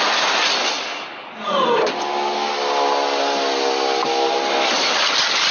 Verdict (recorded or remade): recorded